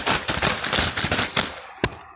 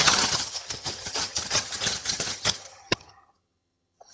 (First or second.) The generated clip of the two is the second